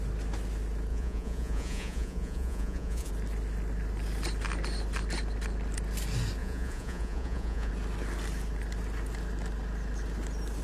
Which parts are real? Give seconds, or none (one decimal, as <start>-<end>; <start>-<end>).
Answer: 0.0-0.9; 3.1-6.4; 7.7-10.6